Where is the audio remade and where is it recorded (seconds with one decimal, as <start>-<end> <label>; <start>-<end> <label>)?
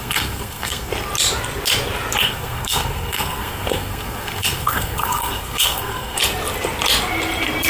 0.0-0.9 remade; 0.9-2.2 recorded; 2.2-6.2 remade; 6.2-7.7 recorded